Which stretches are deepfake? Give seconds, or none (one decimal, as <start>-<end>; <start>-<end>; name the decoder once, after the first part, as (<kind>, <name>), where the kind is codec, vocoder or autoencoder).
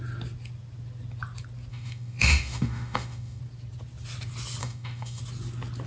1.7-3.4 (autoencoder, DAC-VAE); 4.6-5.2